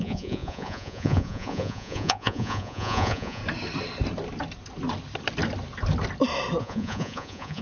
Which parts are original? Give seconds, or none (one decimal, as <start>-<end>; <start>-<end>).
3.4-6.6